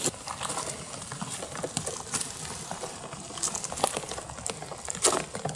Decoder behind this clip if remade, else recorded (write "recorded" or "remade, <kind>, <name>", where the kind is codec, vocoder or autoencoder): recorded